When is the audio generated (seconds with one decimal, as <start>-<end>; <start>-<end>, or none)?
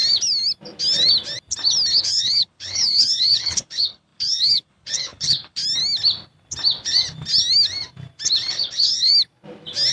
2.0-5.6; 8.5-9.1